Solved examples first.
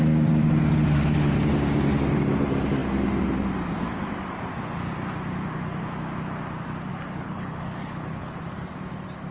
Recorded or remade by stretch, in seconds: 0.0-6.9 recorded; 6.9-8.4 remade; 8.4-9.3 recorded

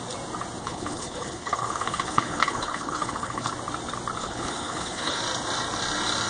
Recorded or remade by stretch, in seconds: 0.0-0.6 recorded; 0.6-3.5 remade; 3.5-4.2 recorded; 4.2-5.2 remade; 5.2-6.3 recorded

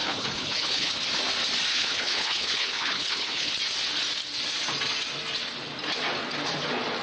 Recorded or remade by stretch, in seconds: 0.0-0.9 remade; 0.9-1.7 recorded; 1.7-3.5 remade; 3.5-7.0 recorded

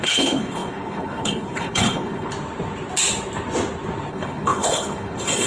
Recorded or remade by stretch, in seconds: 0.0-2.3 remade; 2.3-4.1 recorded; 4.1-5.5 remade

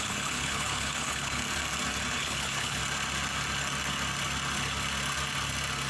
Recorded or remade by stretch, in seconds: 0.0-1.4 remade; 1.4-2.1 recorded; 2.1-2.8 remade; 2.8-5.9 recorded

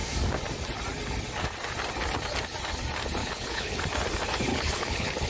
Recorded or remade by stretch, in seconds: 0.0-3.2 recorded; 3.2-3.8 remade; 3.8-4.5 recorded; 4.5-5.3 remade